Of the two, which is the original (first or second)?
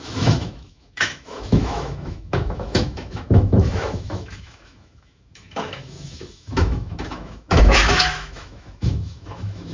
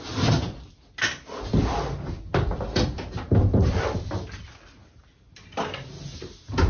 second